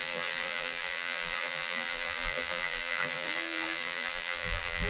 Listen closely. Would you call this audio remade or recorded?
remade